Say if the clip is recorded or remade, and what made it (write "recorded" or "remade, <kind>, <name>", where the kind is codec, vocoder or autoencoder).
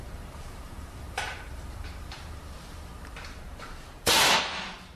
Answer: remade, vocoder, BigVGAN v2